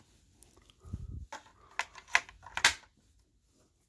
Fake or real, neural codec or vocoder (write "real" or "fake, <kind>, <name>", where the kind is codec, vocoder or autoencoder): real